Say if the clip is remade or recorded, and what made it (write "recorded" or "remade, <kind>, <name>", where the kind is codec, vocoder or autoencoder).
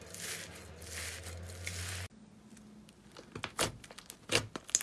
recorded